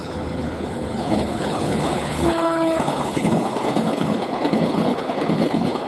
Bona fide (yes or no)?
no